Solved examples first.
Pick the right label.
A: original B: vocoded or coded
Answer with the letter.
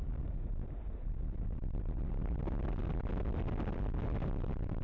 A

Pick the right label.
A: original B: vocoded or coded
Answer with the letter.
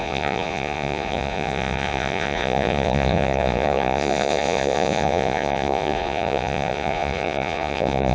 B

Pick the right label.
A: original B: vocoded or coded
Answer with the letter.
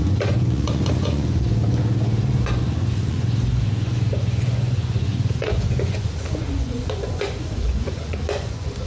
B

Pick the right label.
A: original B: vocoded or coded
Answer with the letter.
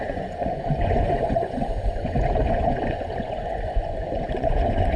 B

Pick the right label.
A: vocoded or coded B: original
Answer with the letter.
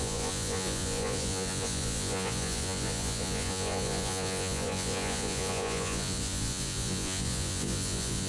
A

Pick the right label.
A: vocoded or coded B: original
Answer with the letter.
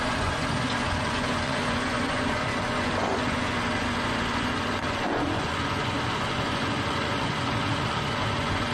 A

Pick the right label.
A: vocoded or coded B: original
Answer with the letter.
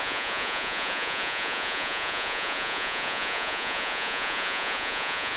A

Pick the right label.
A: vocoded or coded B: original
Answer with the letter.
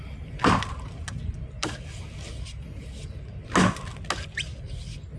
B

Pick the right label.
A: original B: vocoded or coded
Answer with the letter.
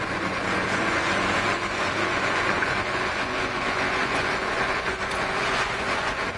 B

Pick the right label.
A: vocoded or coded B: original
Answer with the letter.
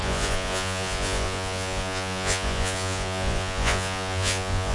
A